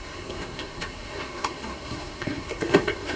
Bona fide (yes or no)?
no